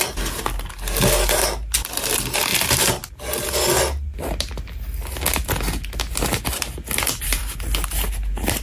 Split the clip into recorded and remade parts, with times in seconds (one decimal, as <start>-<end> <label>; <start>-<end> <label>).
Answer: 0.0-8.6 recorded